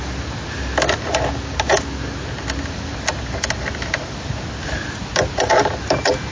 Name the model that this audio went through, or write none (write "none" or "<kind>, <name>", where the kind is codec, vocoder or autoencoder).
none